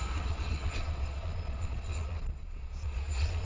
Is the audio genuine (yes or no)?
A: no